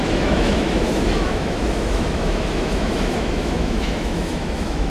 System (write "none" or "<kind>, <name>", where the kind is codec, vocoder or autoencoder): autoencoder, DAC-VAE